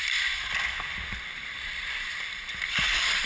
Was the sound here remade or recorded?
remade